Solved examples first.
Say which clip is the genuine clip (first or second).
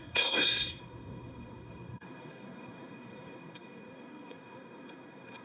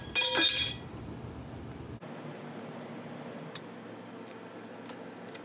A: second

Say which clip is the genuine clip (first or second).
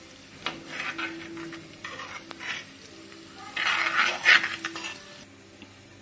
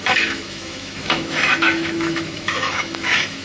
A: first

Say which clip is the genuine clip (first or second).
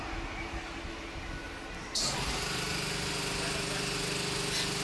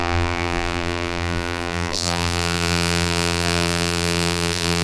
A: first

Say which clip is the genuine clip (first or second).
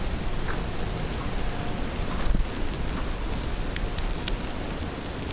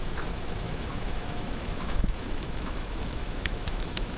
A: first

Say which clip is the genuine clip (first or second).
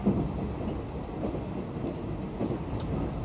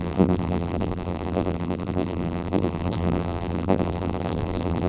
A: first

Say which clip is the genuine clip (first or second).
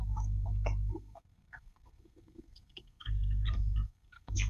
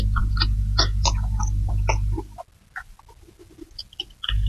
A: second